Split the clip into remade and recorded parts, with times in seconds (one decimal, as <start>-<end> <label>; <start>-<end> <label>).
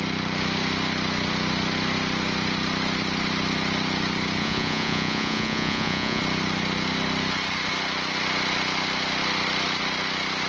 0.0-4.4 recorded; 4.4-6.2 remade; 6.2-10.5 recorded